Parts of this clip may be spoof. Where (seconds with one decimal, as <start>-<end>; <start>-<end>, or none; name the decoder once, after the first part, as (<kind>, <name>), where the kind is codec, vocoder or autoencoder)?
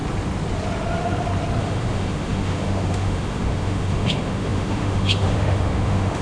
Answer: 1.6-6.2 (autoencoder, DAC-VAE)